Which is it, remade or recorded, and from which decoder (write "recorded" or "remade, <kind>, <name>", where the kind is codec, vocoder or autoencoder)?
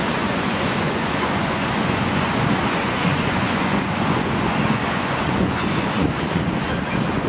remade, vocoder, Vocos